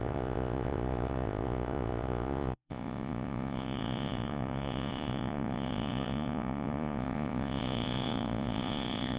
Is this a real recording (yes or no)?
no